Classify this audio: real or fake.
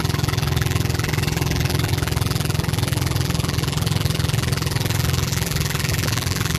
fake